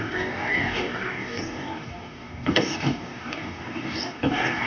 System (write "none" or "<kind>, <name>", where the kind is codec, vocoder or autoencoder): codec, DAC